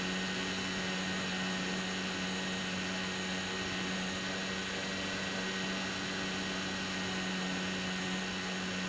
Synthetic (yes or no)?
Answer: no